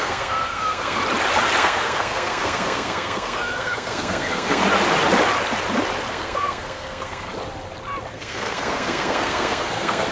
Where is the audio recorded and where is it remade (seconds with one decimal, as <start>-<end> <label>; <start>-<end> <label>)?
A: 0.0-1.0 remade; 1.0-1.6 recorded; 1.6-4.6 remade; 4.6-6.1 recorded; 6.1-7.3 remade; 7.3-8.1 recorded; 8.1-10.1 remade